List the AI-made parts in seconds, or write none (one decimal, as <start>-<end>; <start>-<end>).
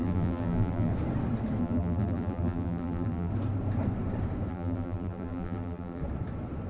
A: 0.0-0.9; 1.6-3.3; 4.5-6.0